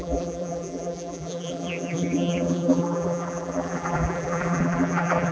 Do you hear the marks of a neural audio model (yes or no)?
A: yes